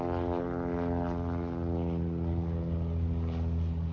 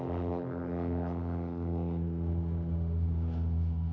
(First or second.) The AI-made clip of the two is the second